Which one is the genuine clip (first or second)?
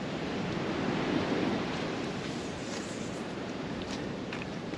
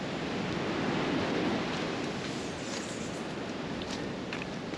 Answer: second